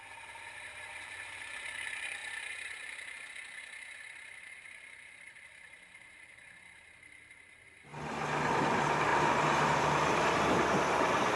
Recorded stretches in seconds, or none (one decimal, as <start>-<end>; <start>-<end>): 2.2-4.1; 7.9-8.5